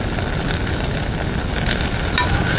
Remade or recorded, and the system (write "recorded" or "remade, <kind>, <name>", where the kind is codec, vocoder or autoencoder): recorded